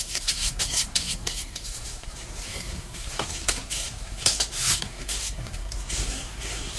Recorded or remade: remade